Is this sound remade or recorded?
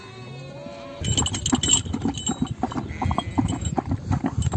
recorded